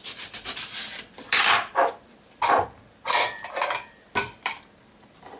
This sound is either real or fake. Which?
fake